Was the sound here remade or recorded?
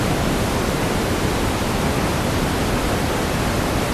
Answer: recorded